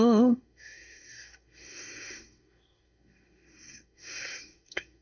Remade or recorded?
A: remade